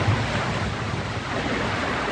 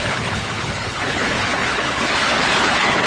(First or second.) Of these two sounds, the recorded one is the first